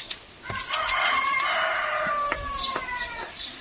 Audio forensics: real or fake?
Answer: real